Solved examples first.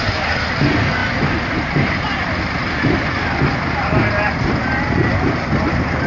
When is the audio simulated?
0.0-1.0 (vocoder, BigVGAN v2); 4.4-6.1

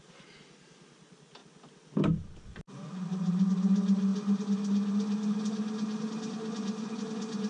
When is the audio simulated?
none

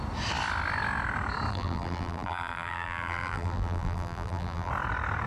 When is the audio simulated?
1.5-4.7 (vocoder, BigVGAN v2)